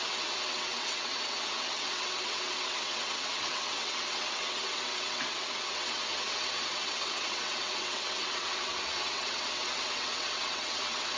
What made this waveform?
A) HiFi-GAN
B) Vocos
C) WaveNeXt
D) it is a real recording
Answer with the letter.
C